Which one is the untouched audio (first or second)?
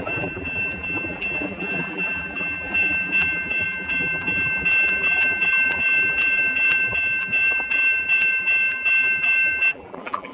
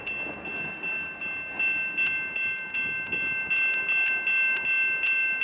second